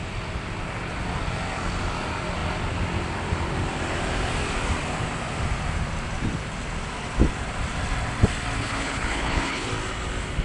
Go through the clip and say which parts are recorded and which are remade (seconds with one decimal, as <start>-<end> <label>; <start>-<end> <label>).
0.0-8.6 recorded; 8.6-9.7 remade; 9.7-10.4 recorded

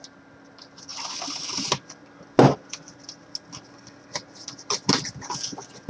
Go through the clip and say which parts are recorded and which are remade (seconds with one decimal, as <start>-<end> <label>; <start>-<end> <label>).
0.0-5.9 recorded

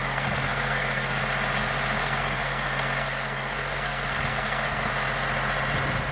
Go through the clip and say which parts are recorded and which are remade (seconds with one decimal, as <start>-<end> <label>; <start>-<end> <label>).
0.0-1.2 remade; 1.2-2.0 recorded; 2.0-4.9 remade; 4.9-6.1 recorded

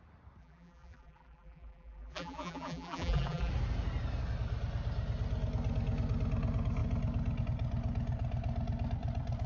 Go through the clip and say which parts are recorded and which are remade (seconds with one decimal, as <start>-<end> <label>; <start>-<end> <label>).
0.0-0.4 recorded; 0.4-3.5 remade; 3.5-9.5 recorded

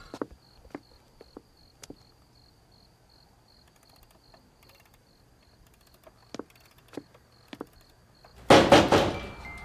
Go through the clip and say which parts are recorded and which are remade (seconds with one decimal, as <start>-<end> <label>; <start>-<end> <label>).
0.0-9.6 recorded

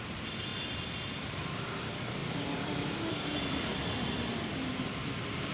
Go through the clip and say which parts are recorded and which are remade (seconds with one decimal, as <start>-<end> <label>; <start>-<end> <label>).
0.0-0.5 remade; 0.5-1.1 recorded; 1.1-5.5 remade

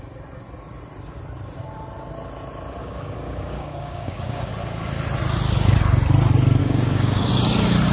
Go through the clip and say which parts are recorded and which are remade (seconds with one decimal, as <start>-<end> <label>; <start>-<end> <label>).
0.0-2.8 recorded; 2.8-4.5 remade; 4.5-6.6 recorded; 6.6-7.3 remade; 7.3-7.9 recorded

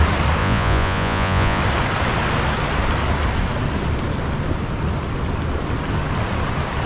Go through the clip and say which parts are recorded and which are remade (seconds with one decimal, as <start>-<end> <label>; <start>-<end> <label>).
0.0-0.4 recorded; 0.4-1.6 remade; 1.6-6.9 recorded